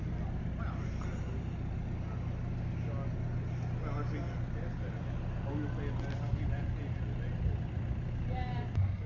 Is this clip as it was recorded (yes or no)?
yes